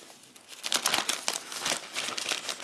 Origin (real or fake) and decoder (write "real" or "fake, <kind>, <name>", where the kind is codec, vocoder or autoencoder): real